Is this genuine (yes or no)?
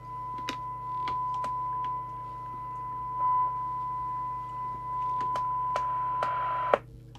yes